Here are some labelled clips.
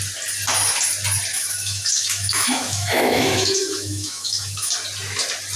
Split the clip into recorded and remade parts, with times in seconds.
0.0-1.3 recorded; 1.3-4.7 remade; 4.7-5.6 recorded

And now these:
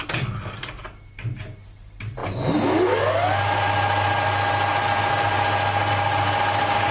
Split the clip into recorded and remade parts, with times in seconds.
0.0-6.9 recorded

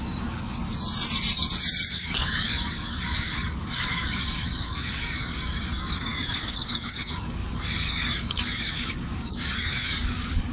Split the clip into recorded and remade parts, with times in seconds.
0.0-0.6 remade; 0.6-1.9 recorded; 1.9-10.5 remade

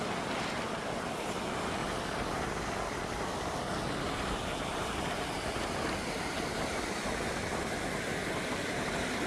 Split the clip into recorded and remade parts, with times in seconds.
0.0-3.3 recorded; 3.3-3.8 remade; 3.8-9.3 recorded

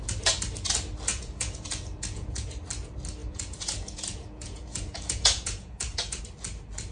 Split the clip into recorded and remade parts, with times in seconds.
0.0-1.1 recorded; 1.1-2.6 remade; 2.6-3.2 recorded; 3.2-6.2 remade; 6.2-6.9 recorded